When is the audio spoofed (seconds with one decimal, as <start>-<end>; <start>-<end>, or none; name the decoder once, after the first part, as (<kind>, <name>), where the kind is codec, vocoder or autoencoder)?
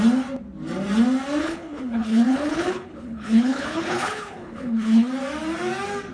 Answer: 1.4-5.1 (codec, HILCodec)